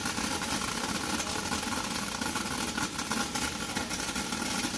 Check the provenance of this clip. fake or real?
real